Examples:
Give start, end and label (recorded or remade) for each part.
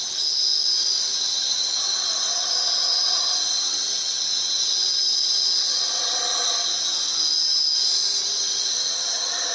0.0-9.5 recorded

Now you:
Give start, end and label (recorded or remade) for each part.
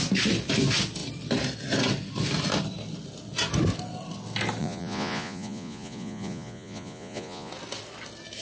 0.0-4.6 recorded; 4.6-7.5 remade; 7.5-8.4 recorded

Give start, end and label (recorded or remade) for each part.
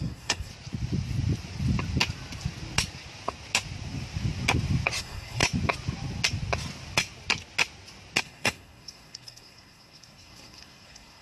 0.0-0.5 remade; 0.5-5.0 recorded; 5.0-5.4 remade; 5.4-8.2 recorded; 8.2-11.2 remade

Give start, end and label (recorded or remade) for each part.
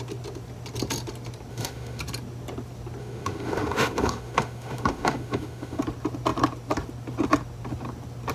0.0-1.5 recorded; 1.5-2.0 remade; 2.0-3.0 recorded; 3.0-5.8 remade; 5.8-8.3 recorded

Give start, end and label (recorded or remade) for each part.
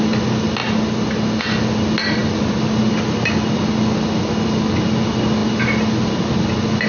0.0-6.9 recorded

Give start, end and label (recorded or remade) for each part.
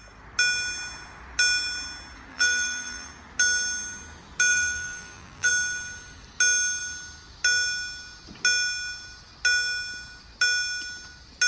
0.0-2.3 recorded; 2.3-3.1 remade; 3.1-4.5 recorded; 4.5-5.5 remade; 5.5-11.5 recorded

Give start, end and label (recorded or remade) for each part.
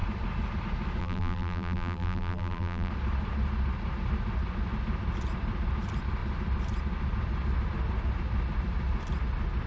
0.0-1.0 recorded; 1.0-2.9 remade; 2.9-9.7 recorded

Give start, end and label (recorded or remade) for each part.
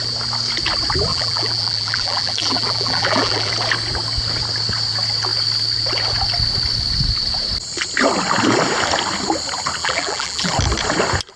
0.0-1.1 recorded; 1.1-3.5 remade; 3.5-9.8 recorded; 9.8-10.5 remade; 10.5-11.4 recorded